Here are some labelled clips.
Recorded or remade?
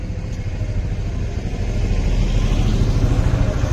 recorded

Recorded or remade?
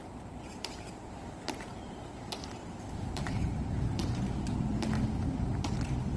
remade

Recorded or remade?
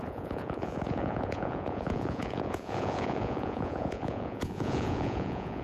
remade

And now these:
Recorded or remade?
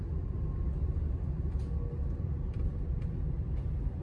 recorded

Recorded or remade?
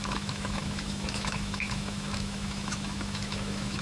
remade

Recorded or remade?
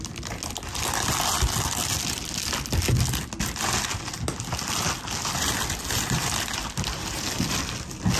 recorded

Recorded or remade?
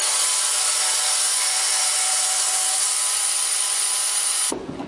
remade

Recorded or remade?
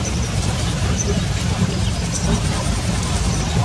remade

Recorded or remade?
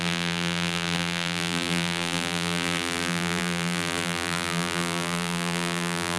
remade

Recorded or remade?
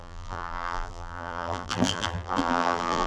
remade